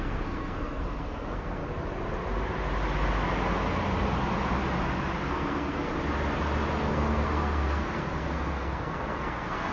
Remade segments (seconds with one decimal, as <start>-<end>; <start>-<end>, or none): 0.0-1.6; 5.3-5.9; 6.9-9.7